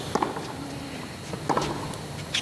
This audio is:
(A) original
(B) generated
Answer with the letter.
A